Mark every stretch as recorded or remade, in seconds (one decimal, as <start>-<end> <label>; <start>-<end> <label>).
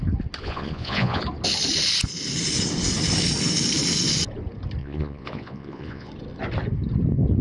0.0-0.4 recorded; 0.4-1.2 remade; 1.2-4.8 recorded; 4.8-6.1 remade; 6.1-7.4 recorded